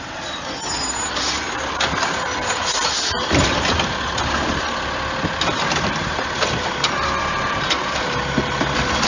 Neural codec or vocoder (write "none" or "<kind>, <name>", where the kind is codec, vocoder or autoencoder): none